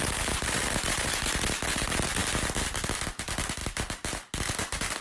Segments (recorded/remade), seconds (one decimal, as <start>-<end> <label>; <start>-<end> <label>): 0.0-5.0 recorded